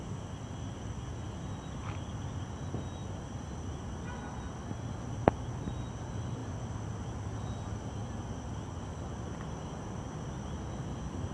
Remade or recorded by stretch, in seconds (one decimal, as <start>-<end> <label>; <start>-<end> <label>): 0.0-11.3 recorded